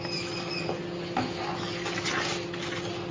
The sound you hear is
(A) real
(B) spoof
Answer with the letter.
A